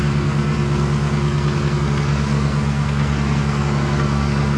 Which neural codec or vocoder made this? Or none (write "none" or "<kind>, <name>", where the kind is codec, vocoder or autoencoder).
codec, SNAC